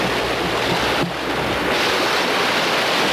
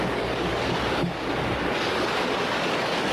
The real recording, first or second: first